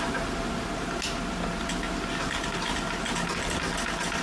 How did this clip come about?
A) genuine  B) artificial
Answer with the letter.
A